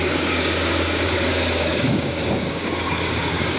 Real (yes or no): no